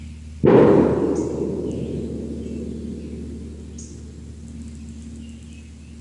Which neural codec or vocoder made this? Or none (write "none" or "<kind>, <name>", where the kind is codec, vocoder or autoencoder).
none